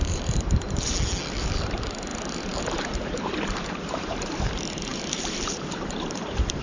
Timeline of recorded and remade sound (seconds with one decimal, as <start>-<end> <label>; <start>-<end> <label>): 0.0-0.9 remade; 0.9-1.4 recorded; 1.4-6.6 remade